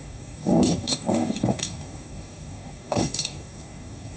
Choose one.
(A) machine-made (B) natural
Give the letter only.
A